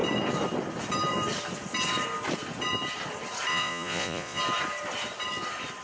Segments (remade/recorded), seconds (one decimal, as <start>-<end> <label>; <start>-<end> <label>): 0.0-3.5 recorded; 3.5-4.4 remade; 4.4-5.8 recorded